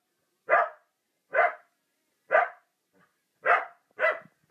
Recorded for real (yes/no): yes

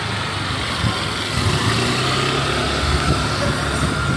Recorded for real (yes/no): yes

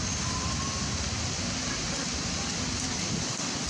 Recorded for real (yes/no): yes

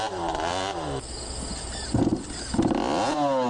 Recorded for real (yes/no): yes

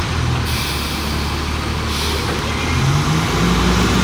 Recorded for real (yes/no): yes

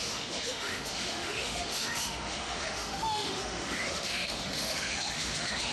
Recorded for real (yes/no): no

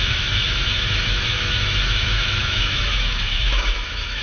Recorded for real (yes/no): no